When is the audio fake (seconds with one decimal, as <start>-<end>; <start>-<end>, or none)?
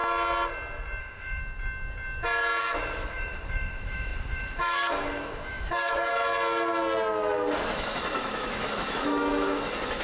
1.0-1.4; 2.6-6.1; 7.7-10.0